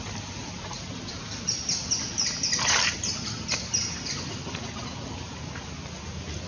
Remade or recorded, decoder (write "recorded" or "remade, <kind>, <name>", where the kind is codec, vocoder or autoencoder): recorded